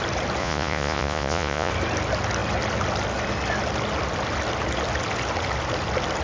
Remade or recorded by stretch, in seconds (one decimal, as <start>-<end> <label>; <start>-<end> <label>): 0.0-0.4 recorded; 0.4-1.7 remade; 1.7-6.2 recorded